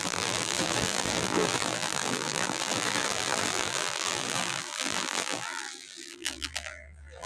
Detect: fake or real fake